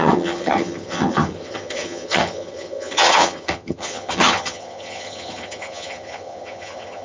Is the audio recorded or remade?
remade